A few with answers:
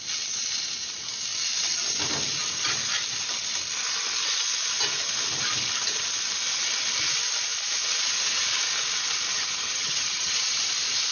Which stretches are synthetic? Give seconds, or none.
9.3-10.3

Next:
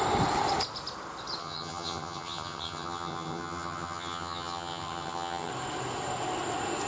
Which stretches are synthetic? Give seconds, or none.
1.4-5.5

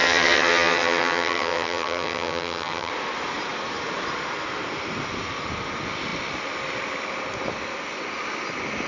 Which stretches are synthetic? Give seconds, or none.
0.0-2.9

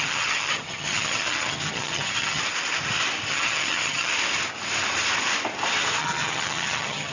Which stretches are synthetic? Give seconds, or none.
0.0-2.4; 3.3-4.1; 6.0-7.1